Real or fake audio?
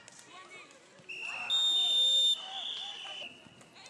real